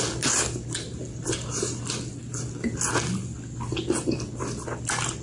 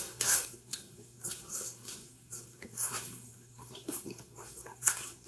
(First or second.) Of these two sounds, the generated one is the second